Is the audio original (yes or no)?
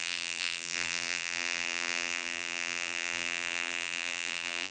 no